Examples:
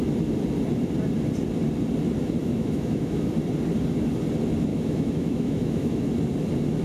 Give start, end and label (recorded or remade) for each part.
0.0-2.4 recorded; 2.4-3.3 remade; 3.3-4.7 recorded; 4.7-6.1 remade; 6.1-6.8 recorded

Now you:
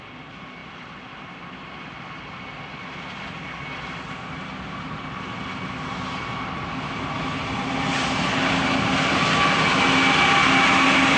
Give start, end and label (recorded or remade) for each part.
0.0-0.6 recorded; 0.6-1.3 remade; 1.3-11.2 recorded

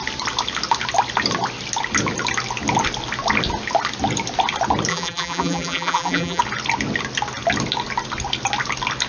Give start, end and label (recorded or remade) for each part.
0.0-4.9 recorded; 4.9-6.4 remade; 6.4-9.1 recorded